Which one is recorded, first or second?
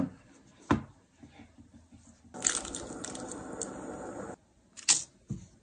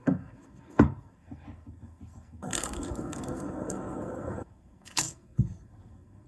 first